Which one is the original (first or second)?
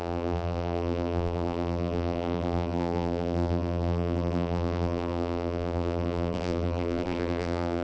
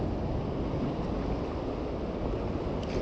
second